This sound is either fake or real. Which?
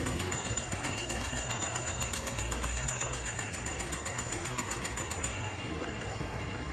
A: fake